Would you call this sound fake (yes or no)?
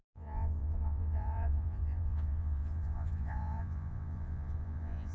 yes